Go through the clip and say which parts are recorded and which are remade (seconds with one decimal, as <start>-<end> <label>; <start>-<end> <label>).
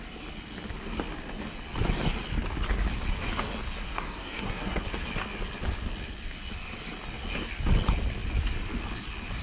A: 0.0-3.9 recorded; 3.9-4.8 remade; 4.8-9.4 recorded